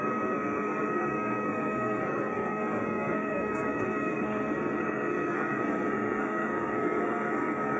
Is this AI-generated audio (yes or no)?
yes